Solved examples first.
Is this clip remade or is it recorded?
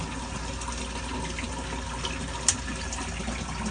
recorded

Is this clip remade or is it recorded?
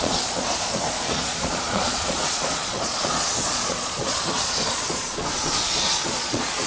remade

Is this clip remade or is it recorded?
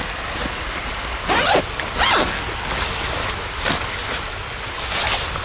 recorded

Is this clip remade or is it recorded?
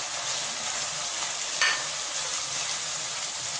recorded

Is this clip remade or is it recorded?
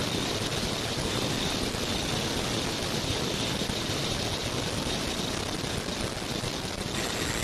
recorded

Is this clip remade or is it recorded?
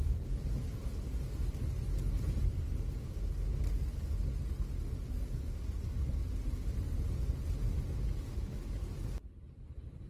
recorded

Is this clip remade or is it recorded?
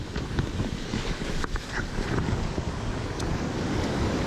remade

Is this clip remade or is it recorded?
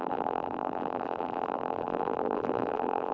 remade